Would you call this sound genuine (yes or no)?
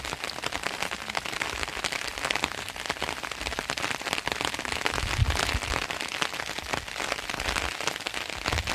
yes